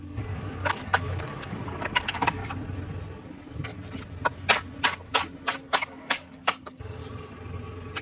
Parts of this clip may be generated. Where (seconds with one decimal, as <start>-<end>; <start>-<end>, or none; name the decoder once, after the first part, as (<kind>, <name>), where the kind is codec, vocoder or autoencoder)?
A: 0.0-2.4 (codec, DAC); 5.7-7.0